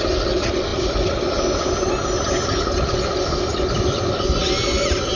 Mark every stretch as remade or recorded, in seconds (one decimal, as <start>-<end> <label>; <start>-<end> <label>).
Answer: 0.0-5.2 recorded